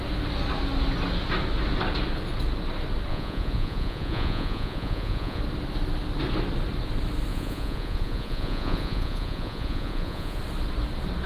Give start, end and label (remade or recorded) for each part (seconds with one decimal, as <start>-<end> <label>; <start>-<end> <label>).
0.0-3.1 recorded; 3.1-5.4 remade; 5.4-7.3 recorded; 7.3-10.4 remade; 10.4-11.3 recorded